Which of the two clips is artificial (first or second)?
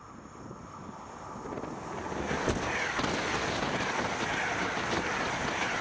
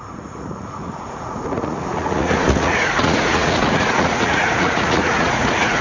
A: second